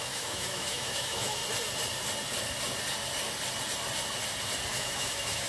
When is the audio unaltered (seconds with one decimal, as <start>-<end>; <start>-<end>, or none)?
1.4-4.7